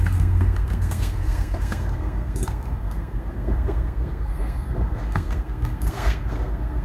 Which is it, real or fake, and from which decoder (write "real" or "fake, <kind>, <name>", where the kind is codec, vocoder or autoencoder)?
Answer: fake, codec, SNAC